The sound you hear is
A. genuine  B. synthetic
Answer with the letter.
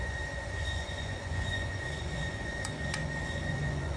B